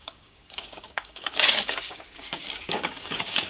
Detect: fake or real fake